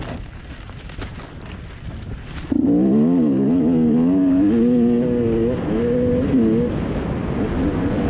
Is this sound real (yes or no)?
yes